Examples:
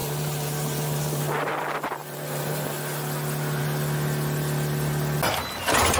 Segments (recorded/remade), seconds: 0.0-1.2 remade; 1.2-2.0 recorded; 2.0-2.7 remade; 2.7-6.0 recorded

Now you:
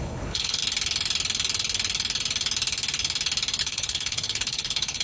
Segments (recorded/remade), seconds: 0.0-0.6 remade; 0.6-3.6 recorded; 3.6-5.0 remade

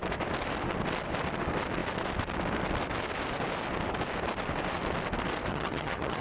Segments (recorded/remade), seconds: 0.0-5.5 recorded; 5.5-6.2 remade

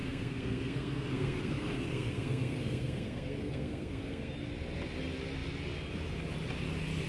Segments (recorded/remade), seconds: 0.0-4.3 remade; 4.3-7.1 recorded

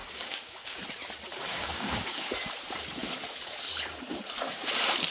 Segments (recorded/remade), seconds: 0.0-0.8 remade; 0.8-1.5 recorded; 1.5-2.3 remade; 2.3-5.1 recorded

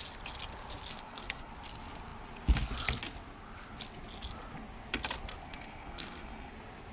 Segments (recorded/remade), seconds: 0.0-0.9 recorded; 0.9-1.5 remade; 1.5-5.5 recorded; 5.5-6.5 remade; 6.5-6.9 recorded

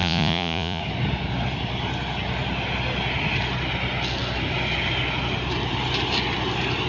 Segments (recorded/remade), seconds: 0.0-0.8 remade; 0.8-6.9 recorded

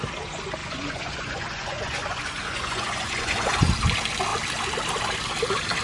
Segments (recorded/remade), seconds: 0.0-0.6 recorded; 0.6-3.7 remade; 3.7-5.8 recorded